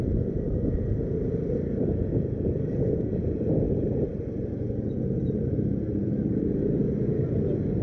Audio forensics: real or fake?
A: real